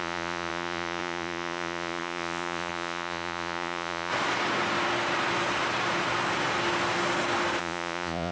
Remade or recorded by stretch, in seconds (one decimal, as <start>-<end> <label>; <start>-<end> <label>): 0.0-4.1 remade; 4.1-7.6 recorded; 7.6-8.3 remade